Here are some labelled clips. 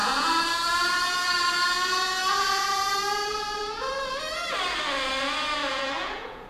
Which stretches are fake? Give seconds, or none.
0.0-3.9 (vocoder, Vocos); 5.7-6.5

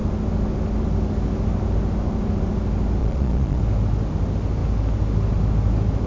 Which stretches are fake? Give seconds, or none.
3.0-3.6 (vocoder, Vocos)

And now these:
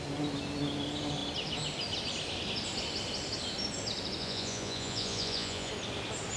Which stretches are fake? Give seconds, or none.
4.2-5.7 (vocoder, Vocos)

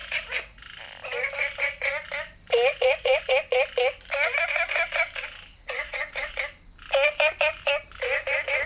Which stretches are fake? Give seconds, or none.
0.0-0.6 (vocoder, Vocos); 2.7-3.3; 5.5-6.3